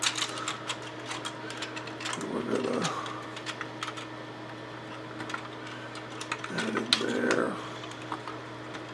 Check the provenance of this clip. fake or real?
real